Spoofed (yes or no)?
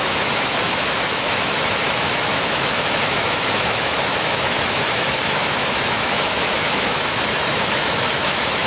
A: yes